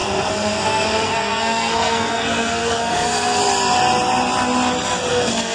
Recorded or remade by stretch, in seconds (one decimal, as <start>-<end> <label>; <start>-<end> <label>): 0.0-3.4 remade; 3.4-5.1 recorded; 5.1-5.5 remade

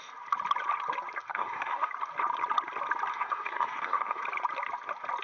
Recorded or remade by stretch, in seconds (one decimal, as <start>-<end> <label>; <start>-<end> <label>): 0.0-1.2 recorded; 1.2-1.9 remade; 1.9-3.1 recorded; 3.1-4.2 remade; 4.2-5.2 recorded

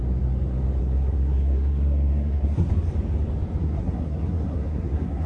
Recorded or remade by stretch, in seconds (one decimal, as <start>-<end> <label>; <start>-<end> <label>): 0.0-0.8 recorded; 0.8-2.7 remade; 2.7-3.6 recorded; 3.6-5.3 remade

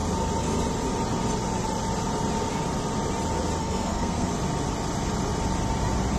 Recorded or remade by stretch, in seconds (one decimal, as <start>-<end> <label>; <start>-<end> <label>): 0.0-3.6 recorded; 3.6-4.3 remade; 4.3-6.2 recorded

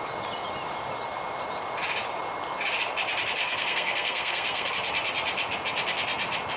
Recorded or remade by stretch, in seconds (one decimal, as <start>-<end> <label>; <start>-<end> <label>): 0.0-3.4 recorded; 3.4-4.7 remade; 4.7-6.6 recorded